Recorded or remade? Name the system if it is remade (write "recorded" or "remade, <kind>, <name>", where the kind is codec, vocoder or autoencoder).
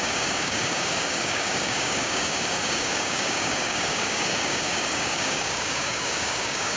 remade, codec, DAC